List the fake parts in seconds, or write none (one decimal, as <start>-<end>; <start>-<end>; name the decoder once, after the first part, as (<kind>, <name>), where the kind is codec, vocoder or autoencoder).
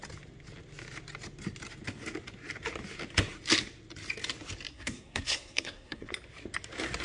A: 4.7-6.1 (codec, SNAC)